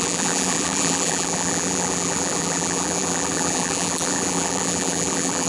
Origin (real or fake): fake